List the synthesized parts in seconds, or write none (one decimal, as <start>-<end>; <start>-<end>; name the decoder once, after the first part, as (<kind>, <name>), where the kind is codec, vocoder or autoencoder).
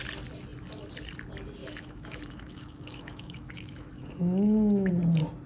1.6-4.9 (autoencoder, DAC-VAE)